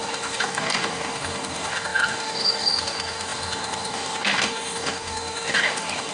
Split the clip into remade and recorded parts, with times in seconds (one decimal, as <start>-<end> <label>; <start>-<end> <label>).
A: 0.0-6.1 remade